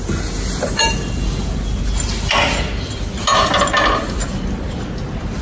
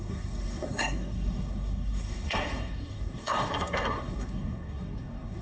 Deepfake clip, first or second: second